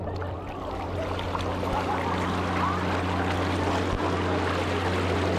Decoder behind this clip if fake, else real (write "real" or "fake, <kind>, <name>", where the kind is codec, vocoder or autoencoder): real